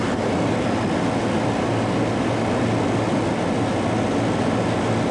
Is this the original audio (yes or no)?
yes